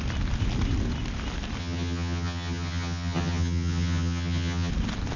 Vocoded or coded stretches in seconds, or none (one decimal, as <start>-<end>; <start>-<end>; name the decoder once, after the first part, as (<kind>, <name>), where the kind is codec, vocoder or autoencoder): 1.6-4.7 (vocoder, HiFi-GAN)